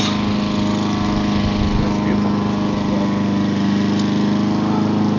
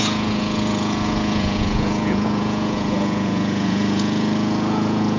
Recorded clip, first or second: first